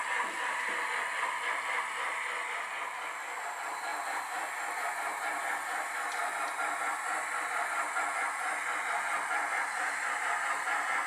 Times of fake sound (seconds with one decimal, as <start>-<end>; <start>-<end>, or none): none